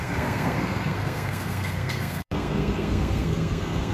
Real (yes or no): no